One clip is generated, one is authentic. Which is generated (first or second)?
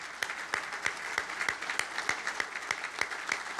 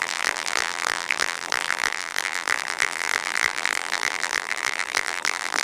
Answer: second